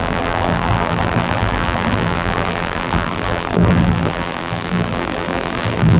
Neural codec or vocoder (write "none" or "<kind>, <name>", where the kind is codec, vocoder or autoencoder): vocoder, BigVGAN v2